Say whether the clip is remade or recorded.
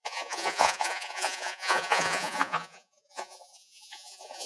remade